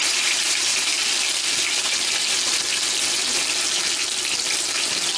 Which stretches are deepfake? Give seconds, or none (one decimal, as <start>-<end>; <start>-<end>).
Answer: none